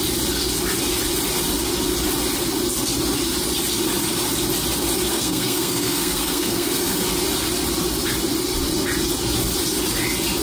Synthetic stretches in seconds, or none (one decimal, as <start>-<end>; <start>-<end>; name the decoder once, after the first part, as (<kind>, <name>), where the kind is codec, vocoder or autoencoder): 5.1-6.9 (codec, SNAC)